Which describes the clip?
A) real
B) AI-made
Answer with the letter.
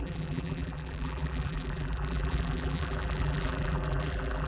B